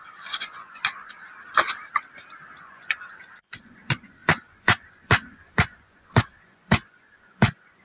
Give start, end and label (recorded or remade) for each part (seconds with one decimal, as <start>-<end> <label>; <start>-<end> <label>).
0.0-1.3 remade; 1.3-2.6 recorded; 2.6-7.8 remade